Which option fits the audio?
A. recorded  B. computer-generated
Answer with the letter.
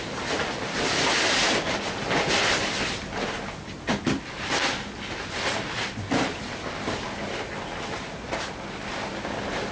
A